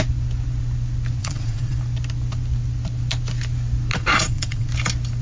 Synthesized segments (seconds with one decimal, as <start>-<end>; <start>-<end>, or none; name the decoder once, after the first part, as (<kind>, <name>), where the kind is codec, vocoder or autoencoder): 1.2-1.8 (vocoder, Vocos); 3.9-4.7